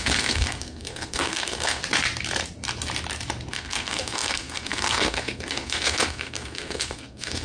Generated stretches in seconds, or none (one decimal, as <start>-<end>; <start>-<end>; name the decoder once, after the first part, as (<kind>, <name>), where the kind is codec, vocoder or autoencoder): 0.0-1.8 (codec, SNAC); 3.5-7.4